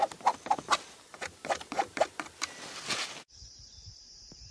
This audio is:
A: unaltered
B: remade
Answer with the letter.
A